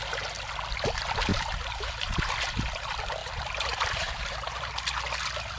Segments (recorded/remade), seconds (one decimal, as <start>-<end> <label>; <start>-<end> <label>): 0.0-1.3 recorded; 1.3-2.3 remade; 2.3-3.2 recorded; 3.2-4.7 remade; 4.7-5.6 recorded

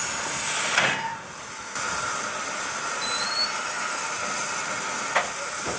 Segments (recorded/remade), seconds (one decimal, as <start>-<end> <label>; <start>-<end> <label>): 0.0-5.8 recorded